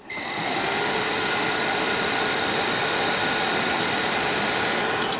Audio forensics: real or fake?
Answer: real